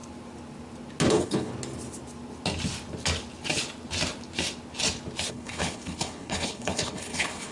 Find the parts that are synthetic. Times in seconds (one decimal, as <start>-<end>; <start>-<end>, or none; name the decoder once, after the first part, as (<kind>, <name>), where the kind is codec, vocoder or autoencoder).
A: 1.1-1.5 (codec, HILCodec); 5.3-7.5